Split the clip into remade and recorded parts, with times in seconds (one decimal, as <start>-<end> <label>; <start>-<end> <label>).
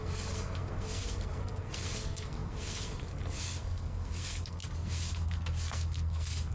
0.0-6.5 remade